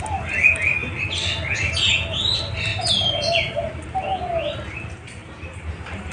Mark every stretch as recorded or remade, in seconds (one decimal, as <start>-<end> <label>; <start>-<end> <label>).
0.0-2.7 recorded; 2.7-4.0 remade; 4.0-5.2 recorded; 5.2-6.1 remade